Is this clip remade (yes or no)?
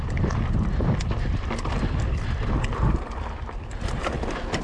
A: no